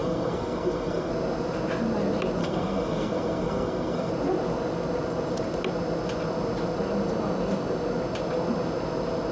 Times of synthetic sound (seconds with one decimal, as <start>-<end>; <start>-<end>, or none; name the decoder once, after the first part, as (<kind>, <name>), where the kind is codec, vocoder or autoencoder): 0.0-1.1 (codec, SNAC); 2.4-4.1